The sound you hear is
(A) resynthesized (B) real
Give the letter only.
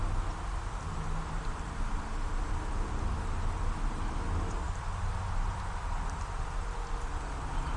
B